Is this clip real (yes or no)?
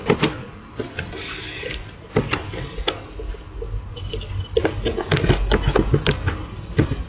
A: yes